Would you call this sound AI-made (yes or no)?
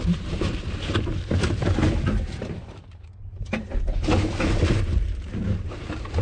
yes